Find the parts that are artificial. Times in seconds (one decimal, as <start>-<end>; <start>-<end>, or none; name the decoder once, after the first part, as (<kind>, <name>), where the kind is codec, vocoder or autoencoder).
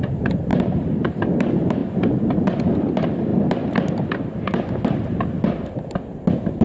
0.5-1.2 (vocoder, BigVGAN v2)